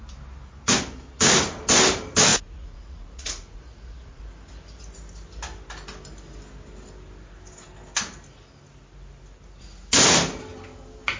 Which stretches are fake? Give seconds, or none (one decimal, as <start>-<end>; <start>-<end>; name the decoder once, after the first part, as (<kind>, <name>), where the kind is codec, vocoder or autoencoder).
2.3-4.2 (vocoder, Vocos)